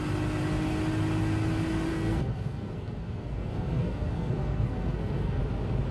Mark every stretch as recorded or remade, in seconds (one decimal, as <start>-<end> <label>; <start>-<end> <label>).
0.0-1.9 recorded; 1.9-5.4 remade; 5.4-5.9 recorded